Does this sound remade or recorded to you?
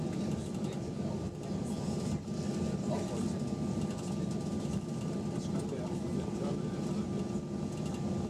recorded